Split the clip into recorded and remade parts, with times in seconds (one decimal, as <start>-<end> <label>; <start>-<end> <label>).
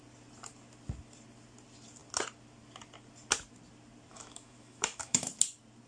0.0-4.1 recorded; 4.1-5.3 remade; 5.3-5.9 recorded